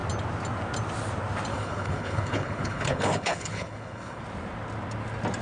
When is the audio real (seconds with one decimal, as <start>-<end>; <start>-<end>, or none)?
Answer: 0.0-1.5; 4.2-5.4